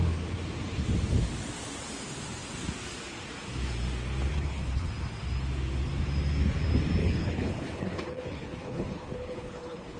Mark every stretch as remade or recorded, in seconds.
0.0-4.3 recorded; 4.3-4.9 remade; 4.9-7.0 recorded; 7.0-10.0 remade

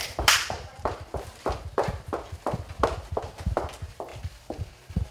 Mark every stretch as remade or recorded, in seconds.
0.0-4.1 recorded; 4.1-5.1 remade

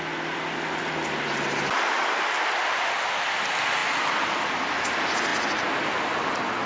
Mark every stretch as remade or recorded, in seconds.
0.0-6.7 recorded

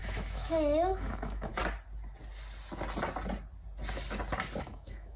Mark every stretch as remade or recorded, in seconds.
0.0-1.5 remade; 1.5-4.6 recorded; 4.6-5.2 remade

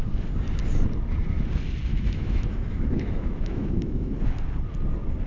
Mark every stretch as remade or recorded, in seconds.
0.0-1.9 recorded; 1.9-4.1 remade; 4.1-5.3 recorded

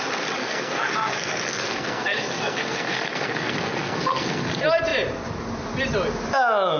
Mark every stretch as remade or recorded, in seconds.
0.0-0.4 recorded; 0.4-4.5 remade; 4.5-6.8 recorded

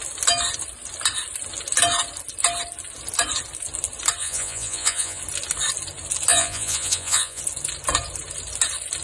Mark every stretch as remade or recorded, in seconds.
0.0-4.2 recorded; 4.2-5.2 remade; 5.2-6.3 recorded; 6.3-7.4 remade; 7.4-9.0 recorded

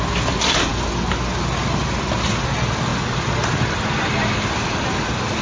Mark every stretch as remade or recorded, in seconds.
0.0-5.4 recorded